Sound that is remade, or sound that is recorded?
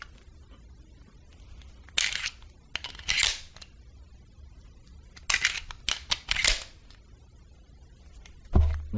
recorded